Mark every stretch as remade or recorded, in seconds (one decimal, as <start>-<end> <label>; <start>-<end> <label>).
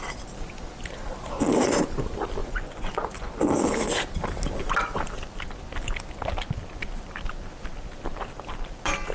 0.0-2.4 recorded; 2.4-3.3 remade; 3.3-9.1 recorded